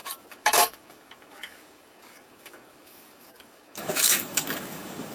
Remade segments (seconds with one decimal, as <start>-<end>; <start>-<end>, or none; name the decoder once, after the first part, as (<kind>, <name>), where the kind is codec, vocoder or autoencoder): 0.0-5.1 (codec, DAC)